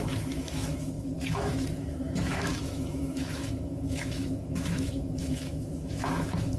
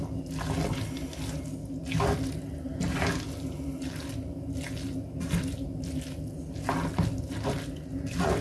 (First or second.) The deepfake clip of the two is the first